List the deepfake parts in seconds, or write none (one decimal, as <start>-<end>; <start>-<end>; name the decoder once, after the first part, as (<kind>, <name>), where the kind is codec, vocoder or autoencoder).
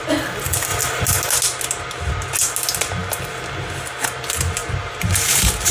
4.6-5.7 (vocoder, BigVGAN v2)